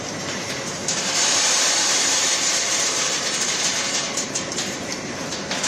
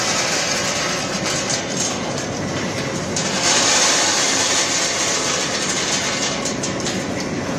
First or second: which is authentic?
second